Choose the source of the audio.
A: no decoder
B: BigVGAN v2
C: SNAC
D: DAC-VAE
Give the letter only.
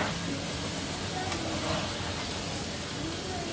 A